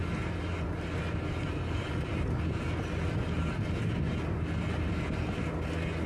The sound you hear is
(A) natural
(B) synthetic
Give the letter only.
A